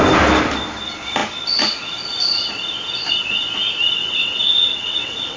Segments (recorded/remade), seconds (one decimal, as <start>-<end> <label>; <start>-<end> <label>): 0.0-4.0 recorded; 4.0-5.4 remade